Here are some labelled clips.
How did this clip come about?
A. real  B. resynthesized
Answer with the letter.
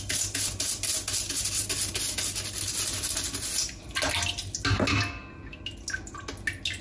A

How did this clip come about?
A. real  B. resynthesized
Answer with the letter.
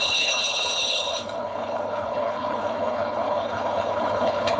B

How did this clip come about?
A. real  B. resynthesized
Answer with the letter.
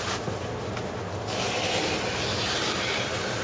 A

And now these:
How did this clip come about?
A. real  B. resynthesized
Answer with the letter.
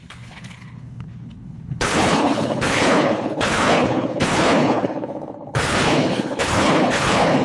B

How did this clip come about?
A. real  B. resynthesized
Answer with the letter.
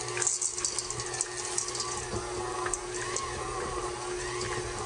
A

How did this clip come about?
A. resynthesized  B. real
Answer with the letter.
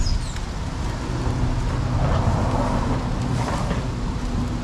B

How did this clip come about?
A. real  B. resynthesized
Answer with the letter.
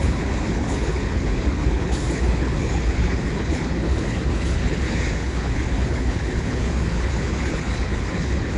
B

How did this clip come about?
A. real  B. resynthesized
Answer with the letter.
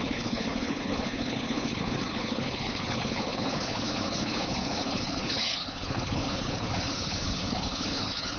B